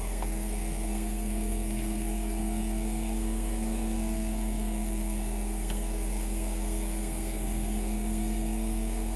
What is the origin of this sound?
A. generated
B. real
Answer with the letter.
A